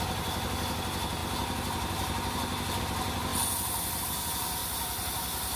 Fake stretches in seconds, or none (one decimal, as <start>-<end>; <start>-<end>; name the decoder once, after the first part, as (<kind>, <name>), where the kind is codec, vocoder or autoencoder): none